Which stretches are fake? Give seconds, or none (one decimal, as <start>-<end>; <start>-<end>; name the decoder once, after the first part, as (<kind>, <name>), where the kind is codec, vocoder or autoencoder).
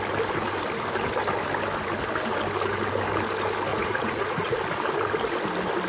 3.7-4.6 (vocoder, Vocos)